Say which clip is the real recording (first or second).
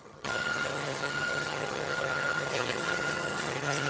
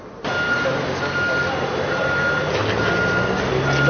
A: second